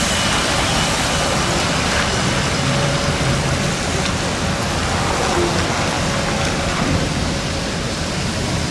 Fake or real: real